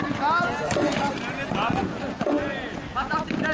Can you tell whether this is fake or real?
real